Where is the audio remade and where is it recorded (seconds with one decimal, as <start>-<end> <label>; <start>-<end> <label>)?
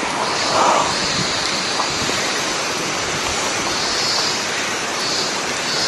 0.0-1.0 recorded; 1.0-4.5 remade; 4.5-4.9 recorded; 4.9-5.4 remade; 5.4-5.9 recorded